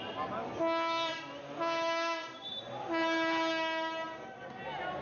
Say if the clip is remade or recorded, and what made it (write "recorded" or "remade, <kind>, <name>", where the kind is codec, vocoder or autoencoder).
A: recorded